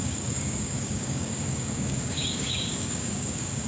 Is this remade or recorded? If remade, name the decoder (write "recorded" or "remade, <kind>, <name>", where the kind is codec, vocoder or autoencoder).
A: remade, codec, DAC